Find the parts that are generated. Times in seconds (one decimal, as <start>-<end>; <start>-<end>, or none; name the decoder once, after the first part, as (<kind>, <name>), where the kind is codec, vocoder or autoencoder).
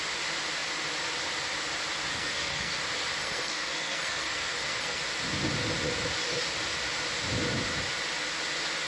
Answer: 2.1-2.8 (codec, SNAC); 3.2-5.0